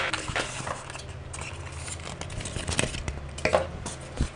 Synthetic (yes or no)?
no